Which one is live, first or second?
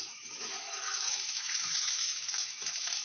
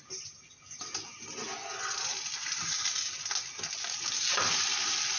second